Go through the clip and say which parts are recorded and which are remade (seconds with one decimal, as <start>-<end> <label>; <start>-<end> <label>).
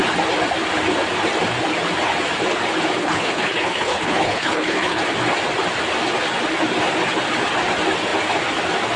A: 0.0-3.0 recorded; 3.0-5.0 remade; 5.0-9.0 recorded